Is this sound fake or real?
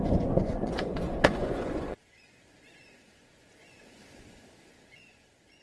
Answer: fake